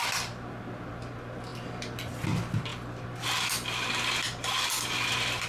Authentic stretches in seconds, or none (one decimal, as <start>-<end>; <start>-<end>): 0.0-5.5